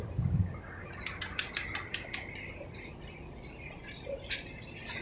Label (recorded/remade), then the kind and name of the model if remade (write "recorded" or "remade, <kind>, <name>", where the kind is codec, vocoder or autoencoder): recorded